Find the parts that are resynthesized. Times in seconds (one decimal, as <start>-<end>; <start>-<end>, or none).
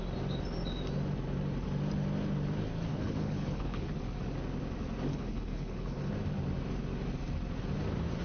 2.9-4.0; 5.1-6.1